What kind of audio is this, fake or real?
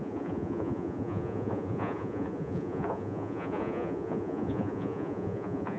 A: fake